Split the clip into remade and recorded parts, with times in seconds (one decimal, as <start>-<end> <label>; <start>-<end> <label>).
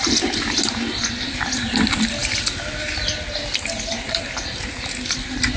0.0-5.6 recorded